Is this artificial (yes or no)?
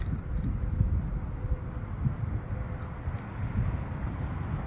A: no